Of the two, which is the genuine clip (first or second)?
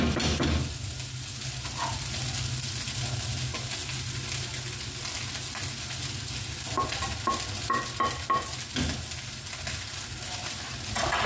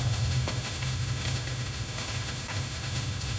first